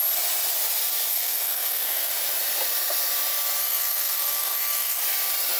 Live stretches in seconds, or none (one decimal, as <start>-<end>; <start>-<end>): 0.0-1.1; 2.1-3.6; 5.0-5.6